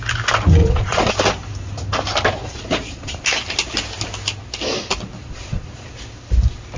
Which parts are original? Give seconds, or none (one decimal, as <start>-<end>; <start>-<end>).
0.0-0.6; 1.1-2.4; 3.1-5.2; 5.9-6.8